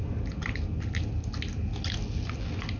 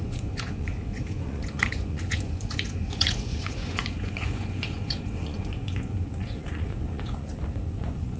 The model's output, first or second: second